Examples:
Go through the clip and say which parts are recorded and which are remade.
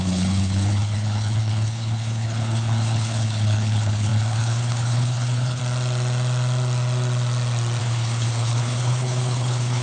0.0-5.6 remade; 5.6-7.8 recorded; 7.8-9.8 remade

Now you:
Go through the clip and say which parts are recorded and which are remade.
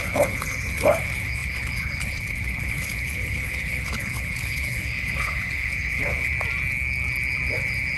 0.0-6.3 remade; 6.3-8.0 recorded